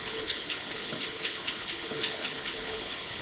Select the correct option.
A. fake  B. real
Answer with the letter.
A